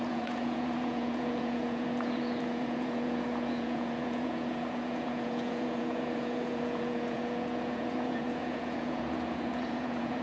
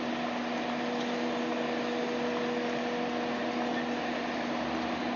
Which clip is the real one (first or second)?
second